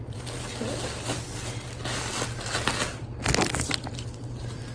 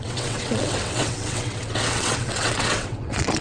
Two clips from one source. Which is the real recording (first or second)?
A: first